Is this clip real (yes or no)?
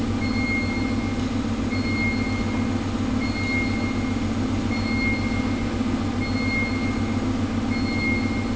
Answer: yes